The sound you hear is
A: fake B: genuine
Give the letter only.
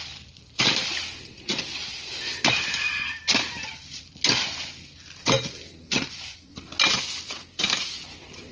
B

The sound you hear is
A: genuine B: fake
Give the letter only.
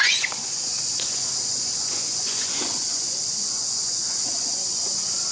B